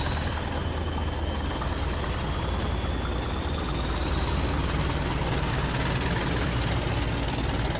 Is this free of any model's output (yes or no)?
yes